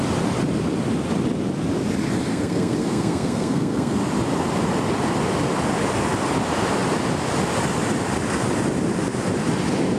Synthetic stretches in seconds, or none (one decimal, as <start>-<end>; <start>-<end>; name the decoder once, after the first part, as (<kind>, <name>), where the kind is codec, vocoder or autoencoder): 2.3-4.0 (codec, SNAC)